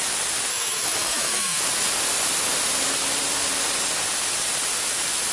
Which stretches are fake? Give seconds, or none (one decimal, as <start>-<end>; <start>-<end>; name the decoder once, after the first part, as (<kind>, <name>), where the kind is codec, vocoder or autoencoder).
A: 0.5-1.6 (autoencoder, DAC-VAE)

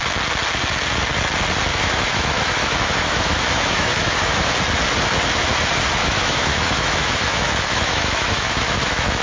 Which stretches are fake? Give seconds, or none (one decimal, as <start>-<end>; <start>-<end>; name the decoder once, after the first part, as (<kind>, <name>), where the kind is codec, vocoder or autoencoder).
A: 1.7-4.5 (autoencoder, DAC-VAE); 6.0-9.2

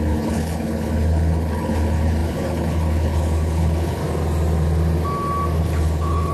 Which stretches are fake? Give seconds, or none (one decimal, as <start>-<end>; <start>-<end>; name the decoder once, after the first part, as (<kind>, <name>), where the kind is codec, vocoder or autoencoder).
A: 0.0-4.0 (codec, HILCodec); 5.6-6.3

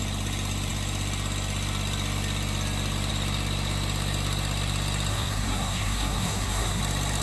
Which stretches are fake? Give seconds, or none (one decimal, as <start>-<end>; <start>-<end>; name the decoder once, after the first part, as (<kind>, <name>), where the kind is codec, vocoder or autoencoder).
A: 5.1-6.8 (codec, SNAC)